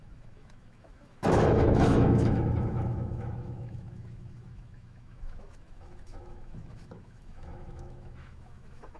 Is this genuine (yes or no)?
no